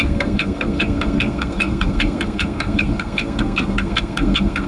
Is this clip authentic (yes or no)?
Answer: no